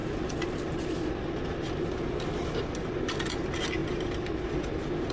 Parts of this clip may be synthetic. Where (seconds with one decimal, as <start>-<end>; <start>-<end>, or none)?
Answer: none